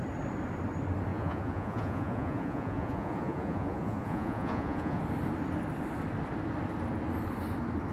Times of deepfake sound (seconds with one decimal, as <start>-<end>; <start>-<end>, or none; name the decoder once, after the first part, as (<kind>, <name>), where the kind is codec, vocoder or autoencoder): 1.1-5.0 (vocoder, Vocos)